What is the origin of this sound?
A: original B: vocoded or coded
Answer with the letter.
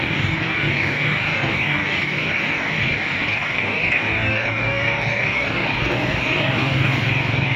B